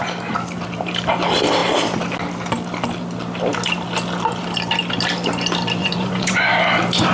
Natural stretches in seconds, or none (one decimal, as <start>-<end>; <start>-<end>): 0.0-5.8; 6.5-7.1